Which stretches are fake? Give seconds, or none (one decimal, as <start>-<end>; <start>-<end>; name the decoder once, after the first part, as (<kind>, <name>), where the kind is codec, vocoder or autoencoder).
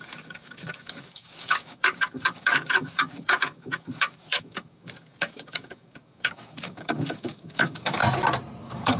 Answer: 0.0-8.0 (codec, DAC); 8.6-9.0